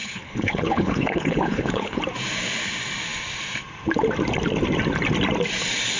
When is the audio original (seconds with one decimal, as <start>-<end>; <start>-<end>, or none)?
2.0-6.0